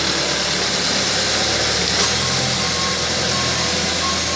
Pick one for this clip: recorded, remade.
recorded